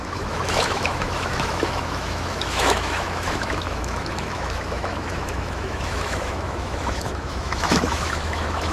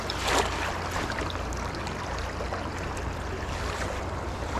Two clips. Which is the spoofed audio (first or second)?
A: first